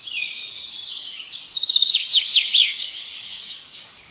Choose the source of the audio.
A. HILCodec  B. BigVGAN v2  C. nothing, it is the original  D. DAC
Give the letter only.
D